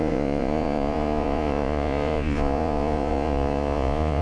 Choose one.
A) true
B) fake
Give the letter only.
B